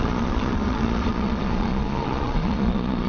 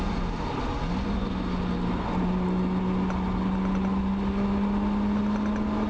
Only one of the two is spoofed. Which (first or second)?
first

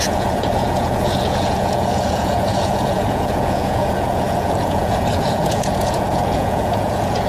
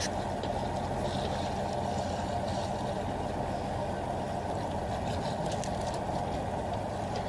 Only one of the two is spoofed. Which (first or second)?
first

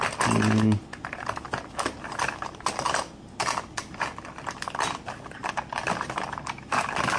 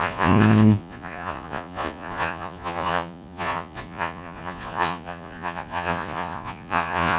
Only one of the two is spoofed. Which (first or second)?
second